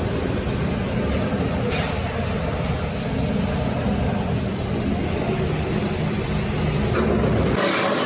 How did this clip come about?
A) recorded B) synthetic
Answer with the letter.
A